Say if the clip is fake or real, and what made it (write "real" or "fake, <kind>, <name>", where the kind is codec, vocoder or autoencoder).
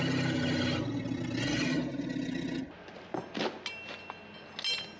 real